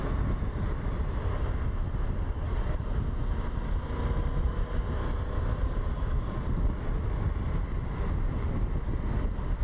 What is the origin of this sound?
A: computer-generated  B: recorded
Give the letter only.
B